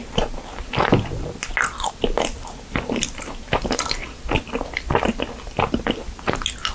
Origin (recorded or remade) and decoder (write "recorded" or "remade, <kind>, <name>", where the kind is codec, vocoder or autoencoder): recorded